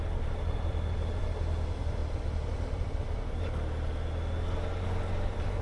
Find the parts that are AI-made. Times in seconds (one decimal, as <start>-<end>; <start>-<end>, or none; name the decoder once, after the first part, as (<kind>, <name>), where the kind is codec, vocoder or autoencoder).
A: none